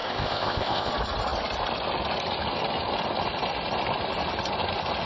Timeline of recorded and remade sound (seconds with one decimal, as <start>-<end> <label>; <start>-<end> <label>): 0.0-0.9 remade; 0.9-5.1 recorded